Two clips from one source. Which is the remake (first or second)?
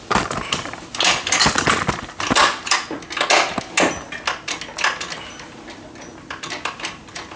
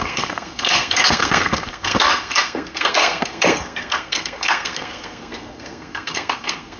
second